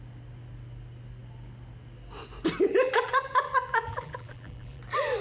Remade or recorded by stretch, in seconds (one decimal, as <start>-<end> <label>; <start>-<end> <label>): 0.0-2.7 recorded; 2.7-4.8 remade; 4.8-5.2 recorded